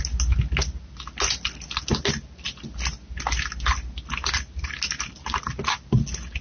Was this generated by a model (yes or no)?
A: no